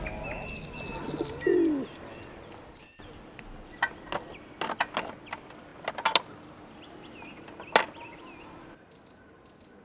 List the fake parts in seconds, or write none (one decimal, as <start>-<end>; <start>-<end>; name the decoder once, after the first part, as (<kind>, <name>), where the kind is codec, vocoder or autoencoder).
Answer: none